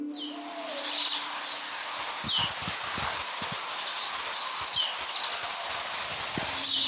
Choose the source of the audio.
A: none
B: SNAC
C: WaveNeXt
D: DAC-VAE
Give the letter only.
A